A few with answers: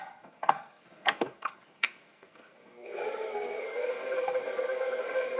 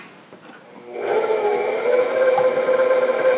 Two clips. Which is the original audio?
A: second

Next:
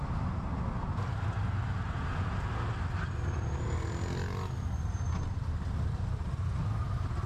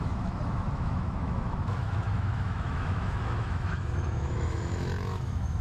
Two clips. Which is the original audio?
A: first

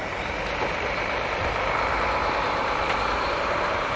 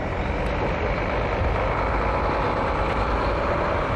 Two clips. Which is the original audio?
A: second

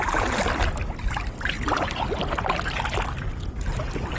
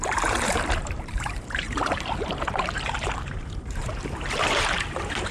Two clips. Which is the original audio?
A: first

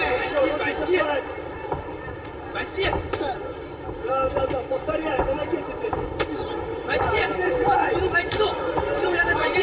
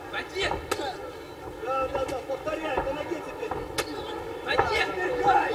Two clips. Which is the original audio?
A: second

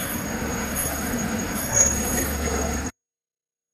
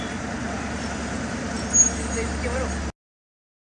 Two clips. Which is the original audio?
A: second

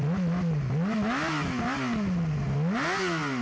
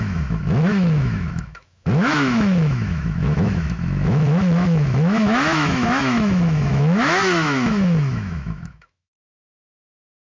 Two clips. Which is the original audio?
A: first